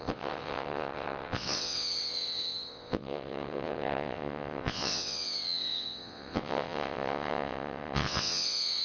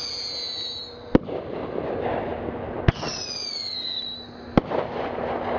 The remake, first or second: first